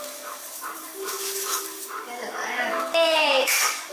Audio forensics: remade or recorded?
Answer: remade